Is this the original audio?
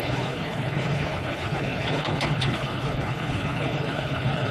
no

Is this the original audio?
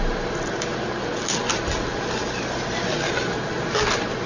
yes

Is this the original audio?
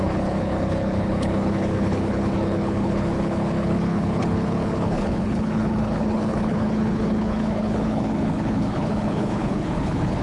no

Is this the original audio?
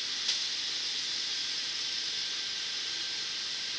yes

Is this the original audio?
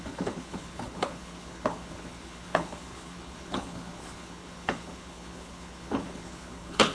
no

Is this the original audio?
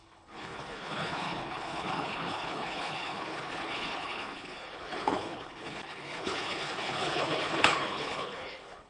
no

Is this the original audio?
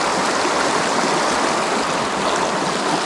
yes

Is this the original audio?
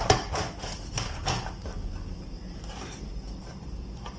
yes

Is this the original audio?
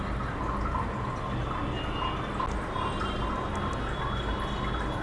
yes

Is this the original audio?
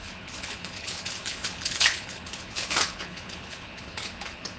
no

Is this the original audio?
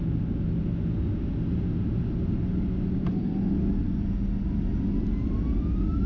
yes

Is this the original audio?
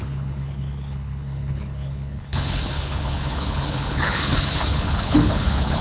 no